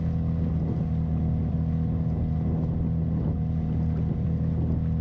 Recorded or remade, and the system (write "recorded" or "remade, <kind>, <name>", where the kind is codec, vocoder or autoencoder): recorded